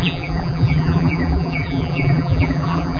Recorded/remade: remade